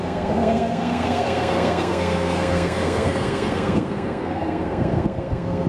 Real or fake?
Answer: fake